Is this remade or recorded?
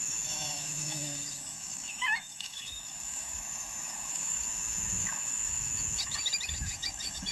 remade